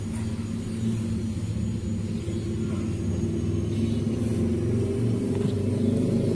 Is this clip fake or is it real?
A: real